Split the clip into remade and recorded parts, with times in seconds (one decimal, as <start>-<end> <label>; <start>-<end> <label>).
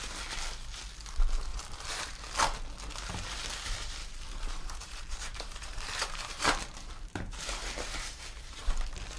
0.0-1.5 recorded; 1.5-2.2 remade; 2.2-4.0 recorded; 4.0-8.7 remade; 8.7-9.2 recorded